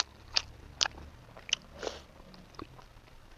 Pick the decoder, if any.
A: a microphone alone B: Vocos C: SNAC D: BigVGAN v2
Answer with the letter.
A